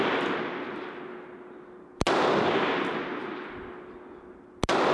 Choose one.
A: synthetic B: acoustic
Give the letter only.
B